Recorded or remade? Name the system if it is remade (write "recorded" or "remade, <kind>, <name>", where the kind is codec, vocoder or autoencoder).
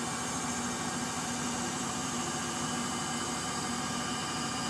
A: recorded